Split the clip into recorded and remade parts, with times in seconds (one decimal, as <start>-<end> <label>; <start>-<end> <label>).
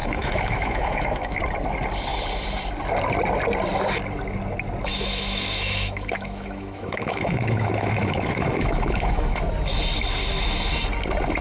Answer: 0.0-1.4 remade; 1.4-4.9 recorded; 4.9-9.4 remade; 9.4-11.4 recorded